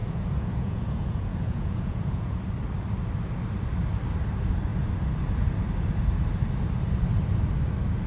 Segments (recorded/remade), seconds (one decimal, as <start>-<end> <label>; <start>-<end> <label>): 0.0-2.4 remade; 2.4-8.1 recorded